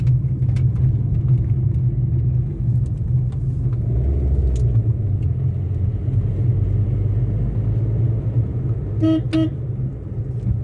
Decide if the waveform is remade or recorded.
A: recorded